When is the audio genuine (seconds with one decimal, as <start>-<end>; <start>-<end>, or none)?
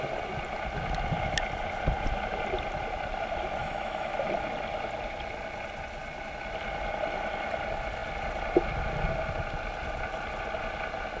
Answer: 0.0-3.6; 4.1-11.2